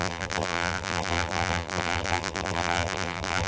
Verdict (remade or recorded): remade